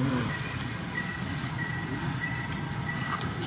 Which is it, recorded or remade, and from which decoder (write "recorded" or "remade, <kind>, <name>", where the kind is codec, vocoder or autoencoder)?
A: recorded